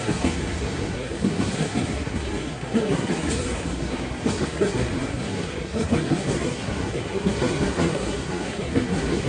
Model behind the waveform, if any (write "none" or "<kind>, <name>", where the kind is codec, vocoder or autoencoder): codec, SNAC